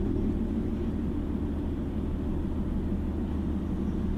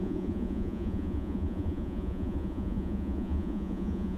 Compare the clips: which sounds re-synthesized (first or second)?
second